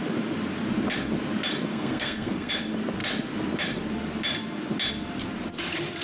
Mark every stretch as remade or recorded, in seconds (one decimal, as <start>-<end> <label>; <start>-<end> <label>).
0.0-1.7 recorded; 1.7-2.5 remade; 2.5-6.0 recorded